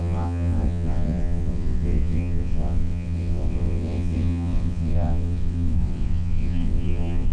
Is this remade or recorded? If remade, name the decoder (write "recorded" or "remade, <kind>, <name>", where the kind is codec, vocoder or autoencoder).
remade, vocoder, WaveNeXt